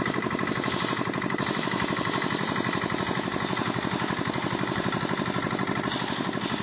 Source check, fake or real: real